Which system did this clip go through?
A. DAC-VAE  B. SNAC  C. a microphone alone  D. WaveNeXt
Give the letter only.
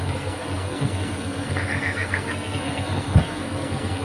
B